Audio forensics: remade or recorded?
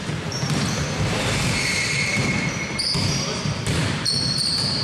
remade